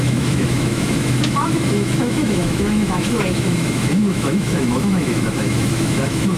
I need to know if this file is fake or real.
fake